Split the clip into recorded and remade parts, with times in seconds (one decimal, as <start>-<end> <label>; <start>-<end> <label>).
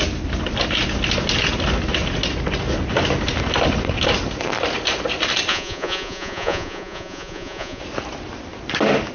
0.0-5.5 recorded; 5.5-7.8 remade; 7.8-9.1 recorded